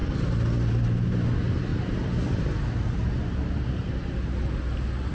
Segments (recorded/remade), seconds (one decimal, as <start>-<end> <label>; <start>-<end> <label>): 0.0-5.1 recorded